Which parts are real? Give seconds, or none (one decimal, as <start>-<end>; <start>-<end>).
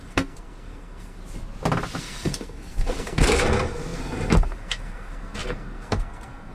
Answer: 1.2-2.0